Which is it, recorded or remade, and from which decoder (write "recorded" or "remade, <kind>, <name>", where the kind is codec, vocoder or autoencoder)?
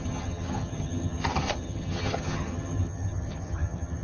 remade, vocoder, HiFi-GAN